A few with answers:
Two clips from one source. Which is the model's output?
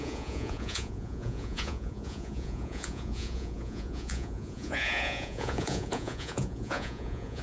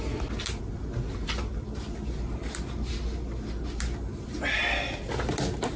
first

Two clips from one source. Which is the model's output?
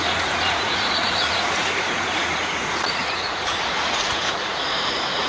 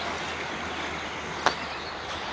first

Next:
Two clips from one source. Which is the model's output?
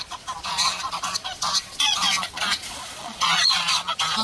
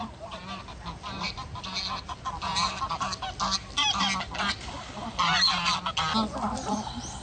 first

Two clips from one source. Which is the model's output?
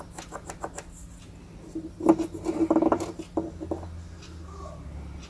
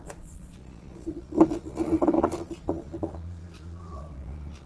second